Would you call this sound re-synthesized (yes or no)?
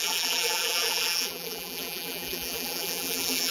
yes